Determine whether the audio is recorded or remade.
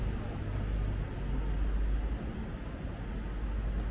recorded